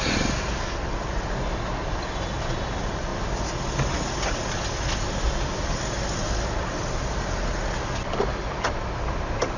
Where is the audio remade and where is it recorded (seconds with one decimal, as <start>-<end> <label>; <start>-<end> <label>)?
0.0-9.6 recorded